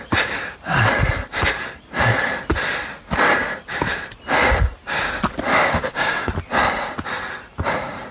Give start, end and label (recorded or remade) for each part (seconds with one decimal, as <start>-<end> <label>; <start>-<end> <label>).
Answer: 0.0-5.5 recorded; 5.5-6.3 remade; 6.3-8.1 recorded